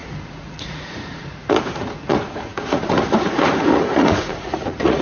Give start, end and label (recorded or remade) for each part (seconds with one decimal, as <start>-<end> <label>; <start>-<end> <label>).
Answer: 0.0-5.0 remade